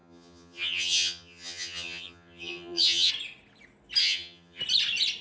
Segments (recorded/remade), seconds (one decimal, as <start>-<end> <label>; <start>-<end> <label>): 0.0-3.1 remade; 3.1-4.0 recorded; 4.0-4.6 remade; 4.6-5.2 recorded